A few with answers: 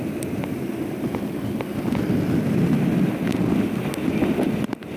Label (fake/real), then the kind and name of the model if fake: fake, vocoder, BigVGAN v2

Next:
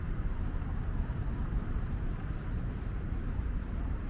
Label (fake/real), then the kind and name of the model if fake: fake, vocoder, BigVGAN v2